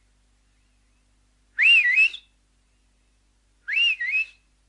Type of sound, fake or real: real